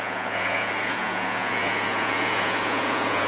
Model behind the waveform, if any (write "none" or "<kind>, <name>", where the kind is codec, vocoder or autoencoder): vocoder, Vocos